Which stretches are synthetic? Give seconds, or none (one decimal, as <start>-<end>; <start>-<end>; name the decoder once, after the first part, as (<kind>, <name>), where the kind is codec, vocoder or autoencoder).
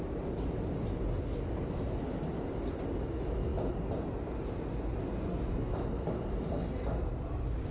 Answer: none